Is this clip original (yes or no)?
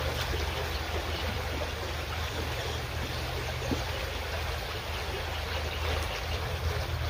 yes